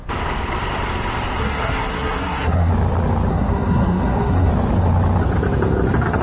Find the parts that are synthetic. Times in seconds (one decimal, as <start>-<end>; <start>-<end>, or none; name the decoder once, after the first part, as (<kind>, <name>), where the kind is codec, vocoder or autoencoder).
1.4-2.7 (codec, SNAC); 3.3-4.5